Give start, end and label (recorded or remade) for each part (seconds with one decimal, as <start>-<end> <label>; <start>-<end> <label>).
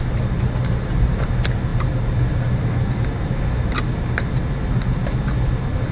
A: 0.0-5.9 recorded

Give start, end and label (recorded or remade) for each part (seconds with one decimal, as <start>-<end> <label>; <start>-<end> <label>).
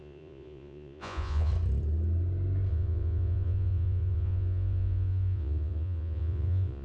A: 0.0-1.5 remade; 1.5-2.7 recorded; 2.7-6.8 remade